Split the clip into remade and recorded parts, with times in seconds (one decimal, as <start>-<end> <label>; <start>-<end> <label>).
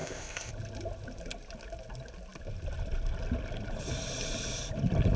0.0-0.5 remade; 0.5-5.2 recorded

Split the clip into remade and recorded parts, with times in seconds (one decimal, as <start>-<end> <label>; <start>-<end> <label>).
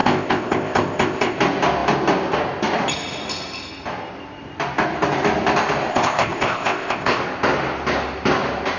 0.0-1.4 remade; 1.4-5.9 recorded; 5.9-7.2 remade; 7.2-8.8 recorded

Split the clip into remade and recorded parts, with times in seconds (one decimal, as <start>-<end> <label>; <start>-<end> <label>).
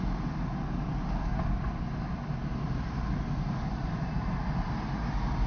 0.0-5.5 recorded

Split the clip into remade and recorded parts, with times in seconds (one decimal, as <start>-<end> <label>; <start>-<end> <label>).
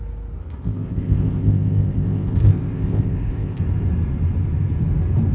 0.0-0.4 recorded; 0.4-3.6 remade; 3.6-5.3 recorded